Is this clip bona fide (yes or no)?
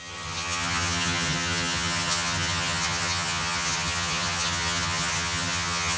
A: no